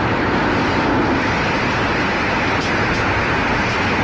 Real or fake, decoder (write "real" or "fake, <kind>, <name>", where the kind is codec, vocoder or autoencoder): real